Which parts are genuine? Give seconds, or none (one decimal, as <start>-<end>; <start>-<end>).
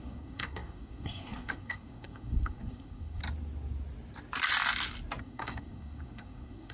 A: 3.2-5.2